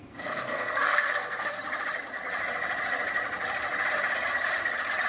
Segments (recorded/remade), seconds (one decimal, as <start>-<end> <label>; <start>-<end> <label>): 0.0-1.6 remade; 1.6-5.1 recorded